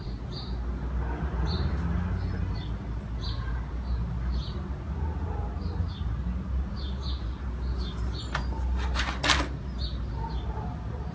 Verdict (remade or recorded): recorded